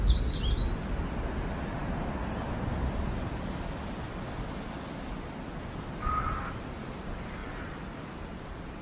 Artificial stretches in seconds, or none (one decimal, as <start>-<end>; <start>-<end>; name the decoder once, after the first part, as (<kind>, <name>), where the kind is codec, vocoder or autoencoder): none